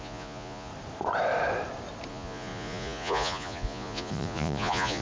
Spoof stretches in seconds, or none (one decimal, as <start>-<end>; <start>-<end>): 0.0-0.7; 2.1-5.0